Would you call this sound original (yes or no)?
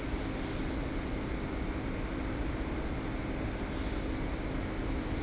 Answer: yes